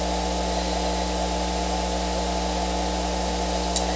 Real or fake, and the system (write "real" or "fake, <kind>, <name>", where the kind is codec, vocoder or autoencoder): real